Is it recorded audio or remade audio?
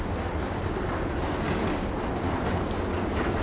recorded